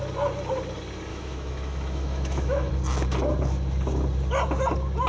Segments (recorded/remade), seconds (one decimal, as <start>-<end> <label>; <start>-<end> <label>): 0.0-1.1 recorded; 1.1-2.7 remade; 2.7-5.1 recorded